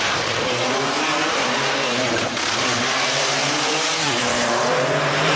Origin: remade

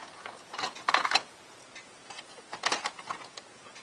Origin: remade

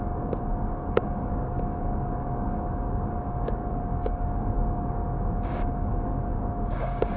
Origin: remade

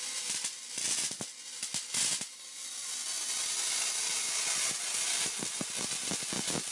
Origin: recorded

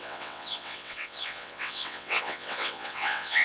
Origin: remade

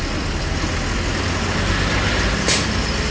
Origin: recorded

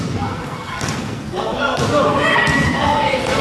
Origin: remade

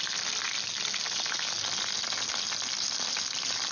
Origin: recorded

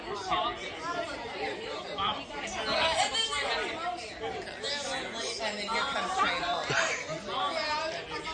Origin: recorded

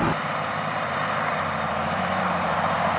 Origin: remade